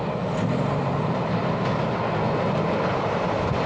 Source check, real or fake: fake